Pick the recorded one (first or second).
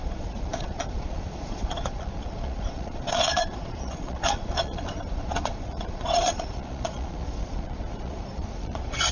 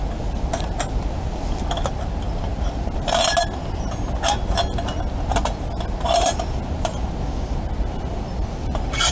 second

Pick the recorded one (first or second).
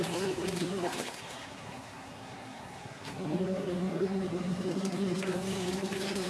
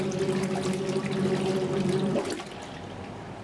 second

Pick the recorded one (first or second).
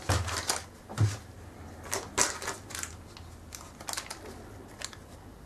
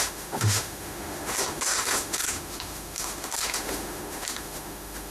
first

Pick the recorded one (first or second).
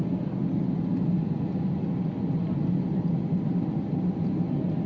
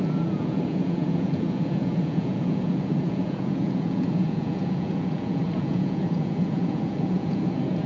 first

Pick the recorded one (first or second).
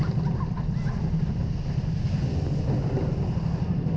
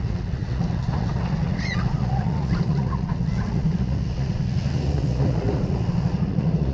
first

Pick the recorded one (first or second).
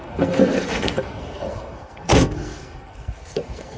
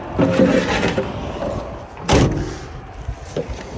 second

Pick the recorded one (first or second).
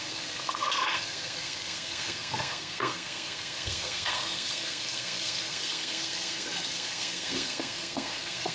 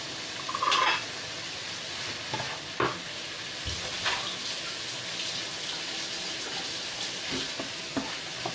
second